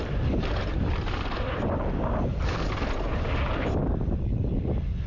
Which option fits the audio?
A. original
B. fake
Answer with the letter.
A